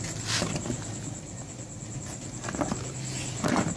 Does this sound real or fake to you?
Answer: real